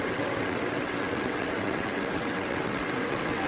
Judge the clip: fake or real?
fake